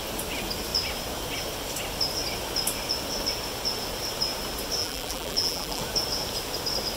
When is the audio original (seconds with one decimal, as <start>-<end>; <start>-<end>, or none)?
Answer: 0.0-4.8; 5.8-7.0